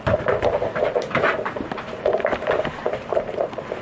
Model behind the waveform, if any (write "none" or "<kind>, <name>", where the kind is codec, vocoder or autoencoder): vocoder, BigVGAN v2